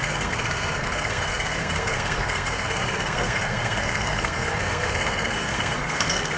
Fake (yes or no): yes